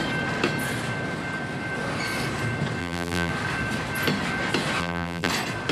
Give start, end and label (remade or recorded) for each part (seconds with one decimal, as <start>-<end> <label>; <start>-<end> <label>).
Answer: 0.0-2.8 recorded; 2.8-3.3 remade; 3.3-4.8 recorded; 4.8-5.3 remade; 5.3-5.7 recorded